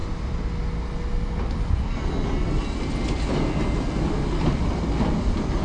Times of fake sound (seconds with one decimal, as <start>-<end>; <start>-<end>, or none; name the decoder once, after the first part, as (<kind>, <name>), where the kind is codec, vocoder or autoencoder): none